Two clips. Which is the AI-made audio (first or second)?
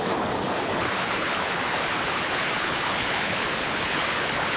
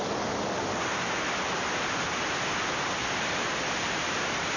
first